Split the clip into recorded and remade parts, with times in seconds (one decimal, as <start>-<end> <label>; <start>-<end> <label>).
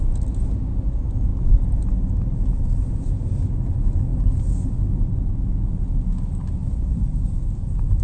0.0-6.6 recorded; 6.6-8.0 remade